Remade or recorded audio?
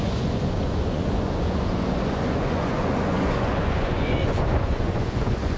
remade